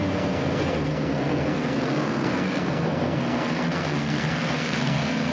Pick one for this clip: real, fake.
fake